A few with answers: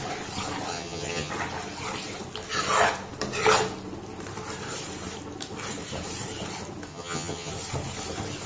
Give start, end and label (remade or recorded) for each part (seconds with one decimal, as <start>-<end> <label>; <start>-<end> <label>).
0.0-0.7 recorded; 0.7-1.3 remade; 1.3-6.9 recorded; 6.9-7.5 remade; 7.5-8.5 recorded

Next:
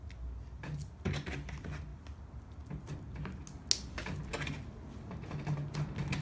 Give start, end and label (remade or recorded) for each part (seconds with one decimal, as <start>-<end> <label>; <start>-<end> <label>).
0.0-6.2 recorded

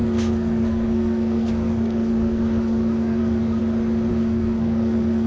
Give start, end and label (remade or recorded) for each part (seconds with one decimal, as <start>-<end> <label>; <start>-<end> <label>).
0.0-3.6 remade; 3.6-4.1 recorded; 4.1-5.3 remade

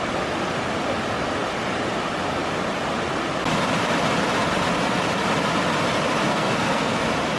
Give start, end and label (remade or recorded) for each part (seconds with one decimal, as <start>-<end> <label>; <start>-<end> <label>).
0.0-6.3 recorded; 6.3-7.0 remade; 7.0-7.4 recorded

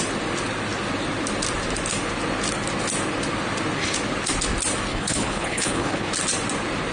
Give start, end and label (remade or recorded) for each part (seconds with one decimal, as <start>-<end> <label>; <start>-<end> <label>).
0.0-4.9 recorded; 4.9-6.1 remade; 6.1-6.9 recorded

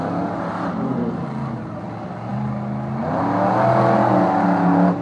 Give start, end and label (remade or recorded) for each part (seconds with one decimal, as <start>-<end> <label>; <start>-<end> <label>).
0.0-5.0 recorded

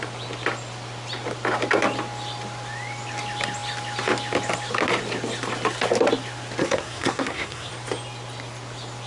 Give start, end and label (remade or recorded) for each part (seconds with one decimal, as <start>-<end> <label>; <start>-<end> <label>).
0.0-6.6 recorded; 6.6-7.7 remade; 7.7-9.1 recorded